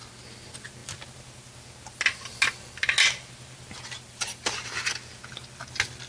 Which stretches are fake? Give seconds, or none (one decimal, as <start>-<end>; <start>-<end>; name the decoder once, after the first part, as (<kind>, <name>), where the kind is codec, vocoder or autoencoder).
none